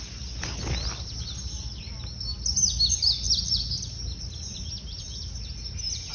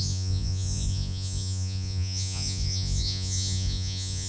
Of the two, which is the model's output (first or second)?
second